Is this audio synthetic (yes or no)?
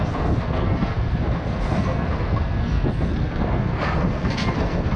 yes